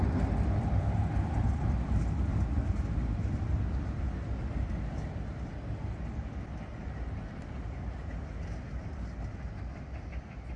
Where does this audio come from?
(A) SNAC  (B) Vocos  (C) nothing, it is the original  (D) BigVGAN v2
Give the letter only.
C